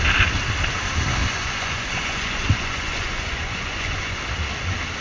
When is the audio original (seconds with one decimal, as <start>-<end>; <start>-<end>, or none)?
0.0-1.2; 4.2-5.0